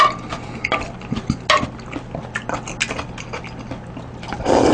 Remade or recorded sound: recorded